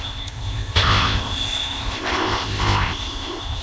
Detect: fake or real fake